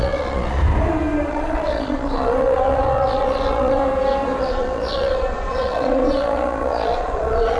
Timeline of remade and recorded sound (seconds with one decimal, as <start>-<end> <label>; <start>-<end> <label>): 0.0-0.6 remade; 0.6-1.3 recorded; 1.3-3.8 remade; 3.8-4.4 recorded; 4.4-7.6 remade